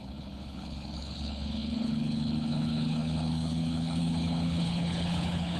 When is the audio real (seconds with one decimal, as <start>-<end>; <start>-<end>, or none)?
none